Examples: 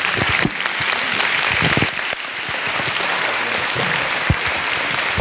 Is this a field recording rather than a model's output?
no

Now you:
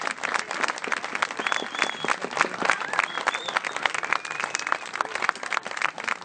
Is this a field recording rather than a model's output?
yes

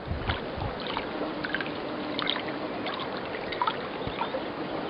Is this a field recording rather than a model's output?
yes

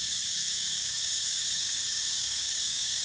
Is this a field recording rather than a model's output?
no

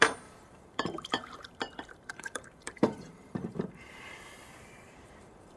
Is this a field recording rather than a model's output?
no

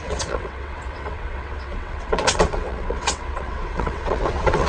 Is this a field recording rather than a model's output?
no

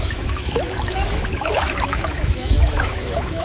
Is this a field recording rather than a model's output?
no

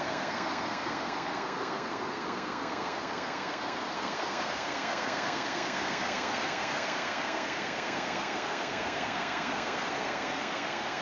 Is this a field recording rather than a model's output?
no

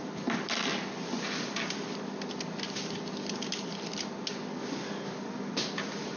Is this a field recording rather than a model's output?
yes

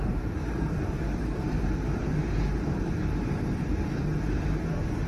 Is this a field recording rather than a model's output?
no